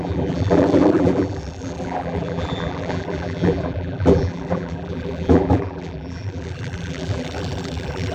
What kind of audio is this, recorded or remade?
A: remade